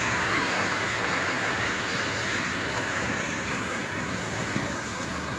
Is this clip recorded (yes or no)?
no